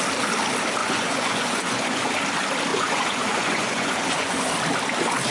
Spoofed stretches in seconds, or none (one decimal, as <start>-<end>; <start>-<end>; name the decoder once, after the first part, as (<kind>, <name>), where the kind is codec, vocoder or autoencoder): 0.8-2.1 (vocoder, Vocos); 2.7-4.5